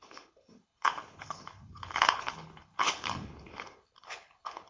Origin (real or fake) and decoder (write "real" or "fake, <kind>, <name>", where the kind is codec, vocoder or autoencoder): fake, codec, HILCodec